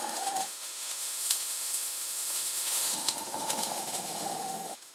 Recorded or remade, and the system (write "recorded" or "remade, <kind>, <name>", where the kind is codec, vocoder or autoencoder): remade, autoencoder, DAC-VAE